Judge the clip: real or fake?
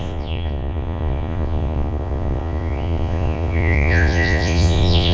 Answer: fake